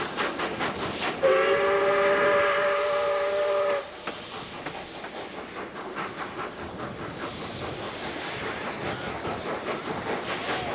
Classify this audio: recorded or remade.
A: recorded